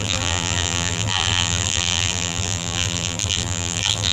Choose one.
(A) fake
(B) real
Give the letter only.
A